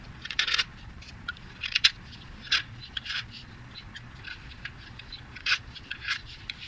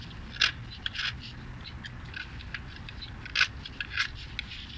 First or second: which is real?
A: second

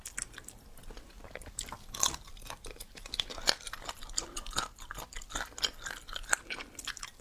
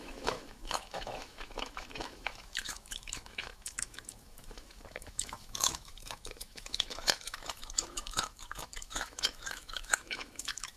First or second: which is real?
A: first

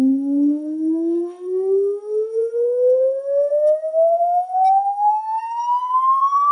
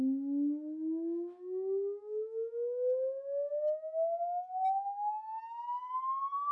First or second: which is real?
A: second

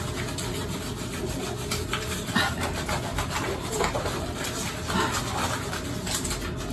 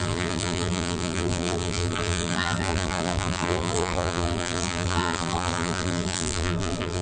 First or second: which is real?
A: first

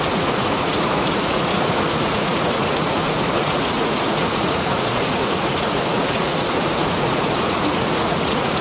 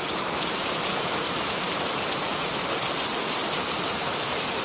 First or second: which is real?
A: second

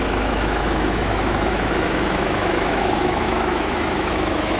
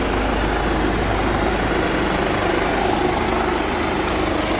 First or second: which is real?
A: second